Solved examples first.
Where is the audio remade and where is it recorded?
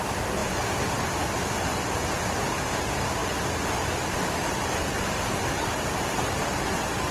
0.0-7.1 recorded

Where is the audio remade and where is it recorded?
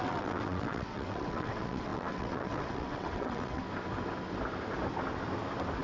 0.0-3.6 remade; 3.6-5.8 recorded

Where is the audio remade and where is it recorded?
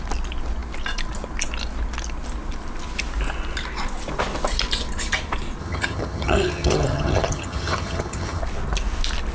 0.0-5.6 recorded; 5.6-8.4 remade; 8.4-9.3 recorded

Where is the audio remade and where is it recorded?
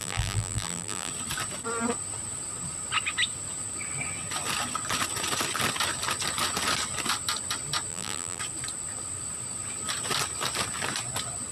0.0-1.1 remade; 1.1-7.9 recorded; 7.9-8.4 remade; 8.4-11.5 recorded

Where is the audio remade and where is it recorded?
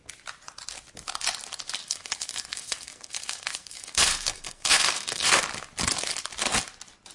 0.0-1.8 recorded; 1.8-5.4 remade; 5.4-7.1 recorded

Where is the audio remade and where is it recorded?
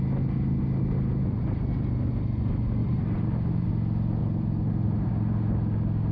0.0-2.8 recorded; 2.8-3.7 remade; 3.7-4.2 recorded; 4.2-5.1 remade; 5.1-6.1 recorded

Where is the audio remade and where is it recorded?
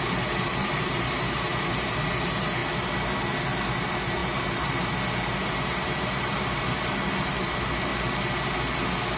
0.0-2.6 remade; 2.6-3.6 recorded; 3.6-7.9 remade; 7.9-9.2 recorded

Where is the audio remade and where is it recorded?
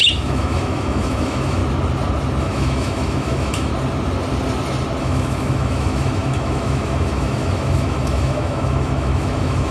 0.0-1.6 remade; 1.6-2.4 recorded; 2.4-3.7 remade; 3.7-5.0 recorded; 5.0-9.7 remade